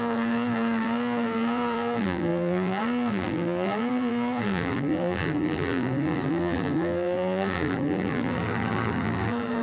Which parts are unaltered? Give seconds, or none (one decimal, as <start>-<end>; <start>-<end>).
none